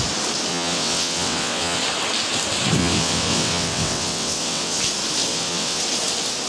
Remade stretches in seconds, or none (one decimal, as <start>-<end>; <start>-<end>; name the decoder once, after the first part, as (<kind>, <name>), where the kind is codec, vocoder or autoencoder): 0.5-1.8 (vocoder, WaveNeXt); 2.8-4.8; 5.3-5.8

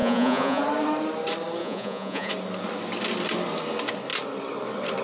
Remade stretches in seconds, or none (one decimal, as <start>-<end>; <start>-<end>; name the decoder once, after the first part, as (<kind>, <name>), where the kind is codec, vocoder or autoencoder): 0.0-0.6 (vocoder, Vocos); 1.6-2.3

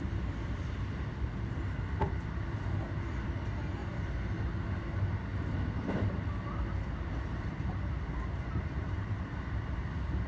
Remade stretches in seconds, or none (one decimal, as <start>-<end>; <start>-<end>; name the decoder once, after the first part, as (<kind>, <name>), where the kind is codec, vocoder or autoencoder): 3.8-4.4 (vocoder, BigVGAN v2); 5.3-9.5

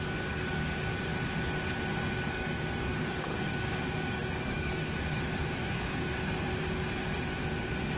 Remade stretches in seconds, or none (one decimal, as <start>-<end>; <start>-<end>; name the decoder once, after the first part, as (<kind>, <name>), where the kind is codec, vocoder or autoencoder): 0.0-0.9 (codec, DAC); 2.3-6.5; 7.6-8.0